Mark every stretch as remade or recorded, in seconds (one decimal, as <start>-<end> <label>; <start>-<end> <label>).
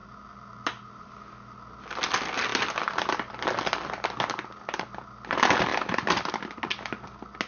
0.0-7.5 recorded